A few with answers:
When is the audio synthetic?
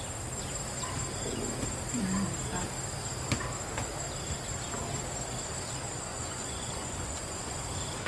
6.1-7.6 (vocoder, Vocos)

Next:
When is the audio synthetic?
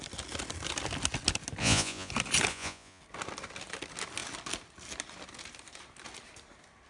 1.6-2.1 (vocoder, Vocos); 2.5-3.0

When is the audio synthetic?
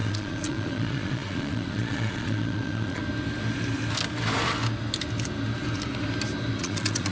0.0-3.0 (vocoder, Vocos); 6.6-7.1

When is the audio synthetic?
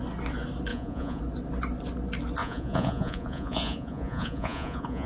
0.7-1.2 (vocoder, Vocos); 2.4-5.1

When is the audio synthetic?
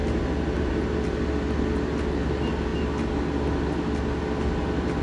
none